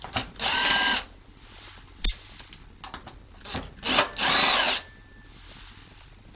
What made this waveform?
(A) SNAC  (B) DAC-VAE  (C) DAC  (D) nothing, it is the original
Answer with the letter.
D